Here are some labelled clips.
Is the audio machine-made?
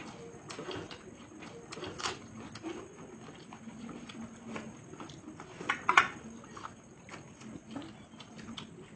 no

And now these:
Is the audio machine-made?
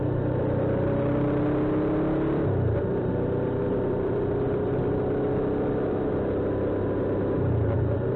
no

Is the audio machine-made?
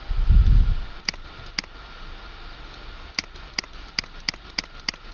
no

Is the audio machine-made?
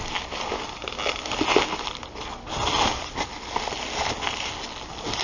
no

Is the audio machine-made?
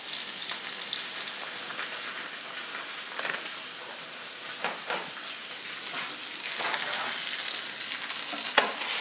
no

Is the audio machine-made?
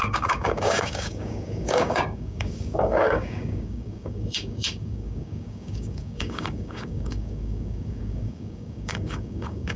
yes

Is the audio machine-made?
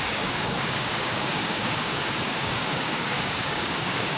yes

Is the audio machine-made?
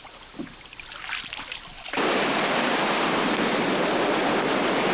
no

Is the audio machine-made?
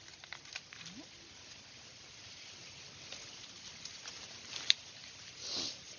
no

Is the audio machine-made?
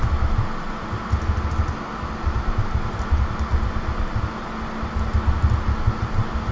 no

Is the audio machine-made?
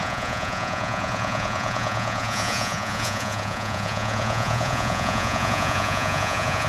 yes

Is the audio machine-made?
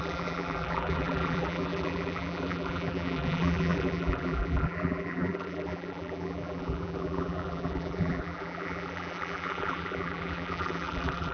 yes